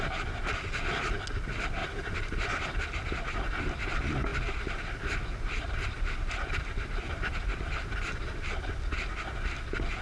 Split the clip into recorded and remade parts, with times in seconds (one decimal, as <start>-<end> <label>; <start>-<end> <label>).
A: 0.0-1.8 recorded; 1.8-2.8 remade; 2.8-4.3 recorded; 4.3-8.7 remade; 8.7-10.0 recorded